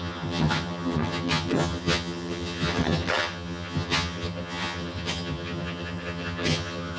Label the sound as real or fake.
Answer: fake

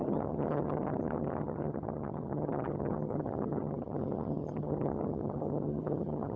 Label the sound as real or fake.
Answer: fake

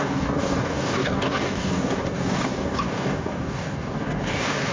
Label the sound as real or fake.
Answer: fake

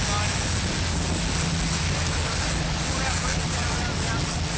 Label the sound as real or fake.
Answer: real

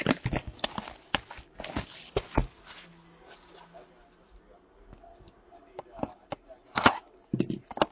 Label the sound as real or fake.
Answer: real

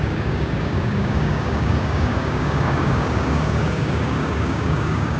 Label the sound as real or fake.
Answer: fake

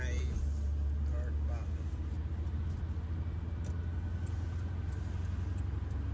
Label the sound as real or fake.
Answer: real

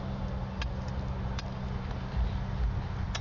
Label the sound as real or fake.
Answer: real